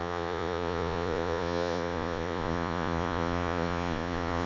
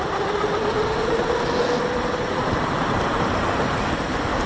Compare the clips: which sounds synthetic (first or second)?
first